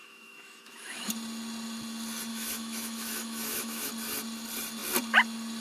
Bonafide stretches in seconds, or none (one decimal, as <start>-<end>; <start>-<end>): 1.1-2.3; 3.9-5.6